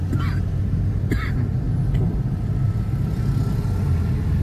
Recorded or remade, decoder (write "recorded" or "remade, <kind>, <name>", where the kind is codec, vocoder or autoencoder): recorded